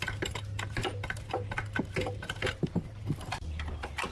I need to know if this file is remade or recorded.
recorded